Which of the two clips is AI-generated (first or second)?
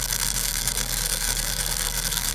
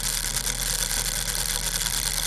first